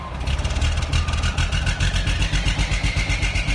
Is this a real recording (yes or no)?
yes